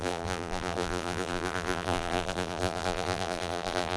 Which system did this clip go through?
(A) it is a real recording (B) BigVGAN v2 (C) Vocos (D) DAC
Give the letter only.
B